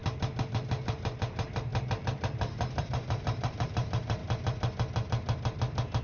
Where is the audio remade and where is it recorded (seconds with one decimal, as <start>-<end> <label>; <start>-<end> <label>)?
0.0-0.5 recorded; 0.5-1.7 remade; 1.7-2.8 recorded; 2.8-4.2 remade; 4.2-6.0 recorded